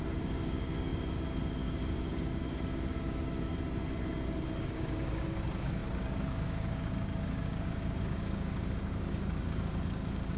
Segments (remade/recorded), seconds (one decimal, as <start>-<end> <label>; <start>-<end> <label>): 0.0-3.5 remade; 3.5-4.6 recorded; 4.6-10.4 remade